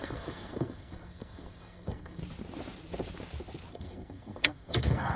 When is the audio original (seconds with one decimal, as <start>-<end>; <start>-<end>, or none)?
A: 2.2-3.7